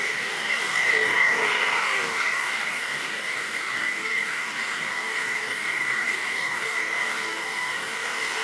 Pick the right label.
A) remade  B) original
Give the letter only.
A